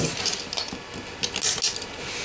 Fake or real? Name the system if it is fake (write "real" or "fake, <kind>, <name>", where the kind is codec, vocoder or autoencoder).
real